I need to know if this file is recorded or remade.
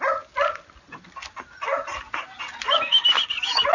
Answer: recorded